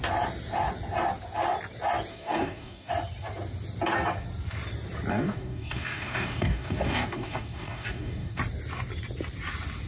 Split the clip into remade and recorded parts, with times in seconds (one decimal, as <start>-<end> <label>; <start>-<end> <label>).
0.0-2.1 recorded; 2.1-2.9 remade; 2.9-5.1 recorded; 5.1-8.4 remade; 8.4-9.9 recorded

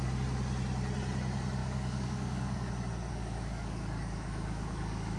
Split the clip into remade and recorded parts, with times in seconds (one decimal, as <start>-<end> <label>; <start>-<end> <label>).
0.0-1.6 recorded; 1.6-2.7 remade; 2.7-3.1 recorded; 3.1-5.2 remade

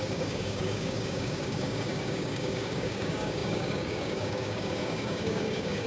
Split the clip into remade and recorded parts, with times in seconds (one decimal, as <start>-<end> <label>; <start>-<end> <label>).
0.0-5.9 remade

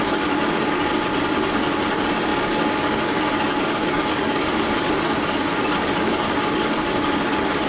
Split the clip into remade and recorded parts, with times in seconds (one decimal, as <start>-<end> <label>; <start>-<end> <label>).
0.0-0.9 remade; 0.9-1.9 recorded; 1.9-7.7 remade

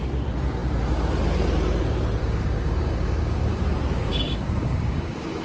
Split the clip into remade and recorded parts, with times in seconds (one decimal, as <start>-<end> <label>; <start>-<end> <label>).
0.0-2.2 recorded; 2.2-3.6 remade; 3.6-4.1 recorded; 4.1-5.4 remade